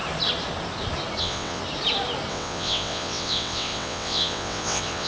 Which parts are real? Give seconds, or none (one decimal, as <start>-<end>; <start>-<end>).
0.0-1.2; 1.6-2.3